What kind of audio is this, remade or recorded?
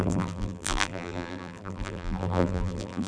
remade